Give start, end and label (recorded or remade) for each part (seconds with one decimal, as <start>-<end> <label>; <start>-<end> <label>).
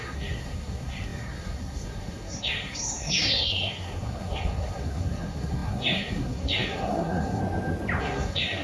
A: 0.0-7.4 remade; 7.4-8.0 recorded; 8.0-8.6 remade